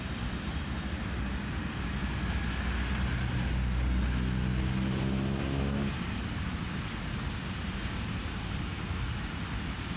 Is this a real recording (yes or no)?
yes